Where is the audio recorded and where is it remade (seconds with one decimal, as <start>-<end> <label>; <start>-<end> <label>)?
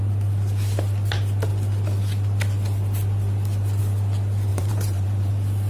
0.0-4.5 recorded; 4.5-5.3 remade; 5.3-5.7 recorded